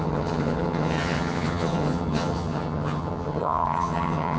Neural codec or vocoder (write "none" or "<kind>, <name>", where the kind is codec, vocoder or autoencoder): vocoder, HiFi-GAN